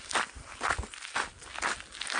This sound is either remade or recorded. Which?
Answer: recorded